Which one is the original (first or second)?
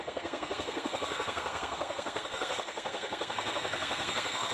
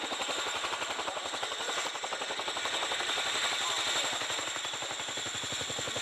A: second